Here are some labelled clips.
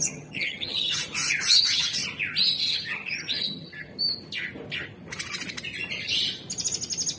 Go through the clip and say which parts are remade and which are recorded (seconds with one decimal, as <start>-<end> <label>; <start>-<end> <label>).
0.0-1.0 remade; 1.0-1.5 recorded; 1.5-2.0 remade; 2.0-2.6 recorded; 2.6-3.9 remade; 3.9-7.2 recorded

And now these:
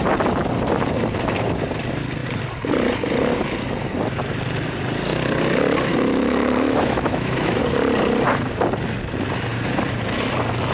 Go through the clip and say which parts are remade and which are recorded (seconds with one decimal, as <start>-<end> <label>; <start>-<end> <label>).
0.0-5.9 recorded; 5.9-7.6 remade; 7.6-10.7 recorded

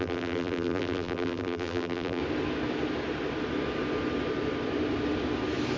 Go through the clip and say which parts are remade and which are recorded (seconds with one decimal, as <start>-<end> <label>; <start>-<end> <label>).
0.0-2.2 remade; 2.2-5.8 recorded